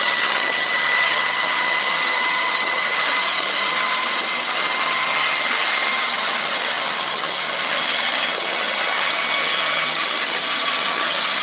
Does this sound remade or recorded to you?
remade